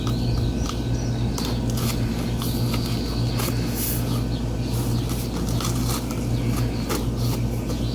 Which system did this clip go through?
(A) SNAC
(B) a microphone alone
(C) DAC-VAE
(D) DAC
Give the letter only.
B